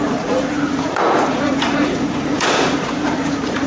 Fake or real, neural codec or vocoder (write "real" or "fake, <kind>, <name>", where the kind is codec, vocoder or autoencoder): fake, vocoder, Vocos